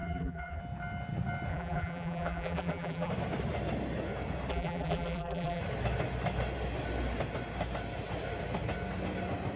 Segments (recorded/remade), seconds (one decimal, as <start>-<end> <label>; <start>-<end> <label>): 0.0-0.6 remade; 0.6-1.5 recorded; 1.5-3.1 remade; 3.1-4.5 recorded; 4.5-5.6 remade; 5.6-9.6 recorded